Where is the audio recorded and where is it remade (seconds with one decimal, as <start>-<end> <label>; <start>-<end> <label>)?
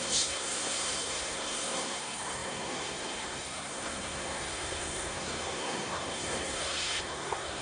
0.0-7.6 remade